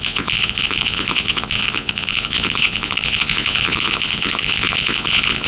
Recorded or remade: remade